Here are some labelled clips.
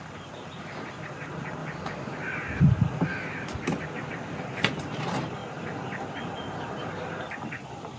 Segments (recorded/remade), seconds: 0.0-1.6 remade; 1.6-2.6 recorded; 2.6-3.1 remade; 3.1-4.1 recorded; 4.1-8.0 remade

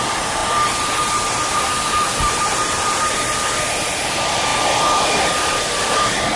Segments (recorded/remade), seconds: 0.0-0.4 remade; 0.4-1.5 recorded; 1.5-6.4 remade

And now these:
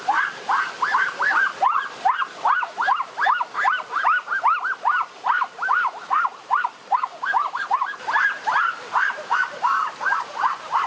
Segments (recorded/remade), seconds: 0.0-7.1 remade; 7.1-7.7 recorded; 7.7-10.9 remade